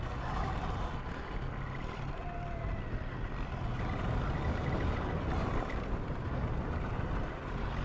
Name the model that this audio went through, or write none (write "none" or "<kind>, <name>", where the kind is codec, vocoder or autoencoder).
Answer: none